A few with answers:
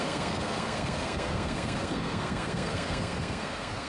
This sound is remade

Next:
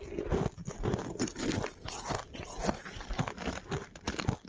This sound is recorded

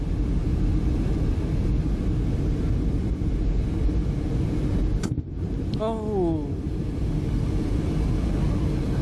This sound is recorded